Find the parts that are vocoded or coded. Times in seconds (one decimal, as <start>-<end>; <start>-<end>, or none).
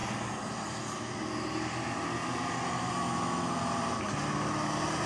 none